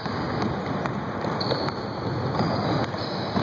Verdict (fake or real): real